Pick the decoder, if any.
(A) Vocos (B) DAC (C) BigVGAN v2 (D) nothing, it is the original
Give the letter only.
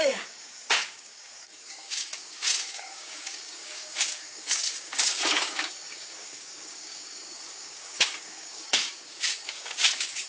B